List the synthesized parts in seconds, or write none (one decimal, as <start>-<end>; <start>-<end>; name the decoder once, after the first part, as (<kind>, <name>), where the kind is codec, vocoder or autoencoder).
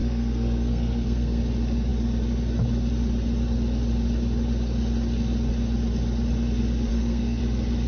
0.0-1.4 (codec, SNAC); 6.9-7.4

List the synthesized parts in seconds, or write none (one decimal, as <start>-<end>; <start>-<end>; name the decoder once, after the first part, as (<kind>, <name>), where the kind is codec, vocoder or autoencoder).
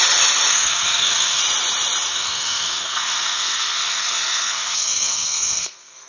0.5-1.4 (codec, SNAC); 2.1-6.1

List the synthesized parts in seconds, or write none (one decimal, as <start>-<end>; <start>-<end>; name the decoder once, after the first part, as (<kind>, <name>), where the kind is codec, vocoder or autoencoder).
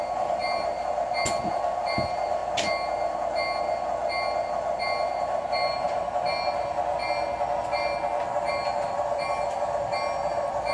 none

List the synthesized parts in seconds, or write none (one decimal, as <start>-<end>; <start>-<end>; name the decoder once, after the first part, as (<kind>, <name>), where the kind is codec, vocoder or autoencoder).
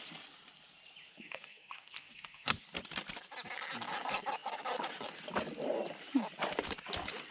1.1-2.5 (codec, SNAC)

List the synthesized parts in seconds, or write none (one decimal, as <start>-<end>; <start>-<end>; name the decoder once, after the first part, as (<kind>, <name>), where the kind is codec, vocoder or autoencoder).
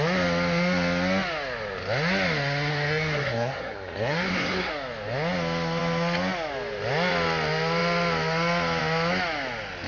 2.7-4.7 (codec, SNAC)